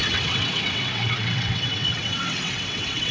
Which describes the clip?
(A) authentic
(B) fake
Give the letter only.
B